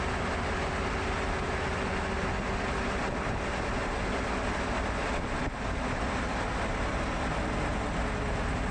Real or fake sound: real